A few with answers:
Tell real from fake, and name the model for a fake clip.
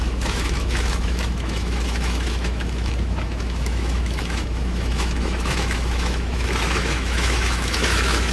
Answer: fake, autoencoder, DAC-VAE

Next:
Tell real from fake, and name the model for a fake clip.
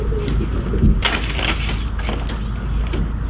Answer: real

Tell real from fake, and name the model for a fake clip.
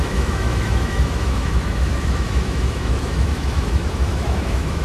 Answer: fake, autoencoder, DAC-VAE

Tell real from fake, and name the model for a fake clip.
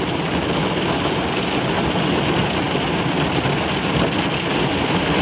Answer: real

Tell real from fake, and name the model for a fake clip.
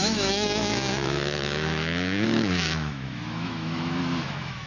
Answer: fake, autoencoder, DAC-VAE